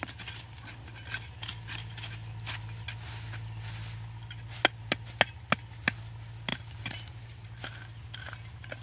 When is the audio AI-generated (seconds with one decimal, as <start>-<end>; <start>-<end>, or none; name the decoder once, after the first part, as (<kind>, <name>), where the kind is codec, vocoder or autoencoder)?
6.5-7.6 (vocoder, BigVGAN v2)

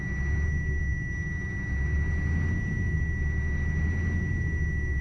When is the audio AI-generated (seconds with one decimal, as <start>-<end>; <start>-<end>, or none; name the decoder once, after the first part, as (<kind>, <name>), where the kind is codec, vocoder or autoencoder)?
none

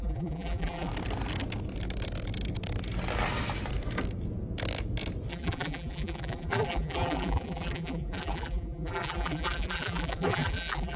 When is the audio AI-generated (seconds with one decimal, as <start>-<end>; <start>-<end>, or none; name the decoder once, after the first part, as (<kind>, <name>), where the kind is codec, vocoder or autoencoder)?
0.0-0.9 (vocoder, BigVGAN v2); 5.3-11.0

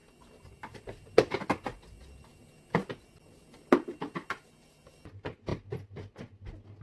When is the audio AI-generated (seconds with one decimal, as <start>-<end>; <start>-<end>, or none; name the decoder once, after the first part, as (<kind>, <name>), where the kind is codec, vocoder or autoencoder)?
0.0-0.8 (vocoder, BigVGAN v2)

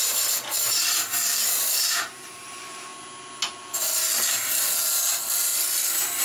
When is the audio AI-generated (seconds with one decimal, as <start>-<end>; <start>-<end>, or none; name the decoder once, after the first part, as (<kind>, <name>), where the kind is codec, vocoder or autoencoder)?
0.0-2.9 (vocoder, BigVGAN v2); 4.1-5.5

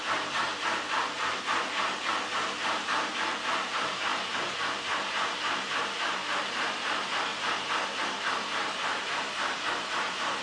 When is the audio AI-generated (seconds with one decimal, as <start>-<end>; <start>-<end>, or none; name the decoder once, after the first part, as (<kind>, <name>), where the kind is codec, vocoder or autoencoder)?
0.0-2.1 (vocoder, BigVGAN v2); 3.2-7.3; 8.0-10.4